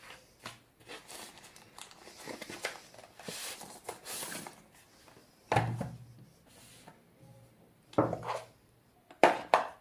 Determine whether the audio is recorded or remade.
recorded